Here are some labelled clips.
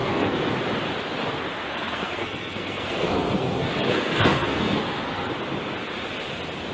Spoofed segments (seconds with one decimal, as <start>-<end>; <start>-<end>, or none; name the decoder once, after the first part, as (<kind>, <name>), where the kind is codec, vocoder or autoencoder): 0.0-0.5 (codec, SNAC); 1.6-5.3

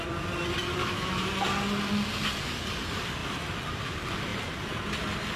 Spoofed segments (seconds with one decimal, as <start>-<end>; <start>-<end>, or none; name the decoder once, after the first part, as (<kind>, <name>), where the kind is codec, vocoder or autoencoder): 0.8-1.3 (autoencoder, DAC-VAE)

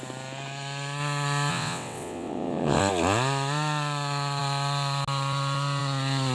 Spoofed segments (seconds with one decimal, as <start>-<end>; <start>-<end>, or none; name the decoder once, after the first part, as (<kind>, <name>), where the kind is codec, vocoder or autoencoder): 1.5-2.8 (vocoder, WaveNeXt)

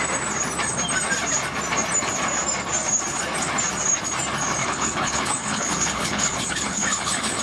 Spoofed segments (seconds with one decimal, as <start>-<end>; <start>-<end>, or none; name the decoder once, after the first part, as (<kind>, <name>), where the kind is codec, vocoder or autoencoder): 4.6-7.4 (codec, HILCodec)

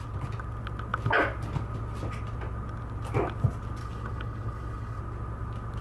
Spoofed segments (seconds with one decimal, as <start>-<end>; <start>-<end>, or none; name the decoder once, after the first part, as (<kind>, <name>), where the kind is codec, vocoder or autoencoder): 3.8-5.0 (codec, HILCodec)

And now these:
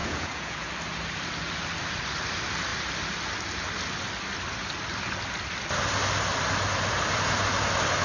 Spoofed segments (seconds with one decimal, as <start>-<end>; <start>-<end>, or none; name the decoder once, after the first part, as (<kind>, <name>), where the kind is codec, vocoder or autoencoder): 0.0-0.7 (vocoder, Vocos)

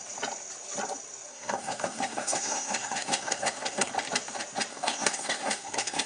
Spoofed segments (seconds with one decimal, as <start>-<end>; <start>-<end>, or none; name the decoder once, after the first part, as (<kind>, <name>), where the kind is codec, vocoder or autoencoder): 1.3-3.9 (codec, SNAC); 4.7-6.1

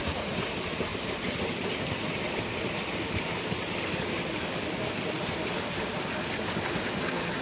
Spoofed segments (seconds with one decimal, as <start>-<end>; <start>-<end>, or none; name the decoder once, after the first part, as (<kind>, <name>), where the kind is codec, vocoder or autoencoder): none